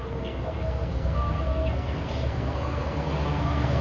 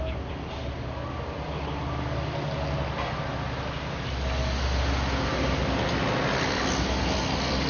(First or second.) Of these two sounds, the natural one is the second